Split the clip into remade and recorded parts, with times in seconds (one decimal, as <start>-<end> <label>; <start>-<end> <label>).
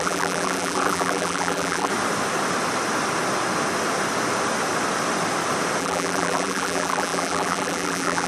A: 0.0-1.9 remade; 1.9-5.8 recorded; 5.8-8.3 remade